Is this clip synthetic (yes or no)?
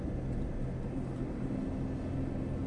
no